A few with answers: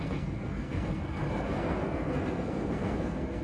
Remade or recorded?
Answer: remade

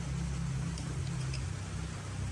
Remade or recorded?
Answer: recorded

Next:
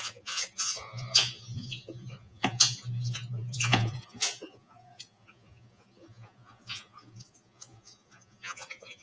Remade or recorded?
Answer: remade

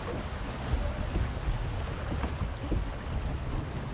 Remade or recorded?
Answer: recorded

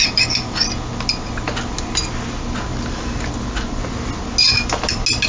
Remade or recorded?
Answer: recorded